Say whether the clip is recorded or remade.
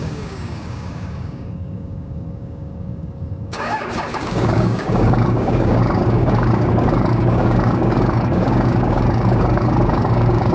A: remade